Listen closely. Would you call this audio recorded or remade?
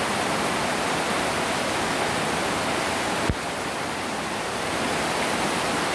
recorded